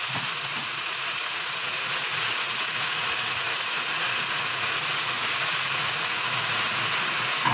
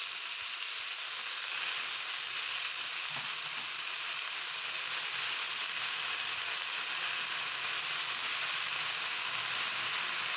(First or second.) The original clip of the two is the second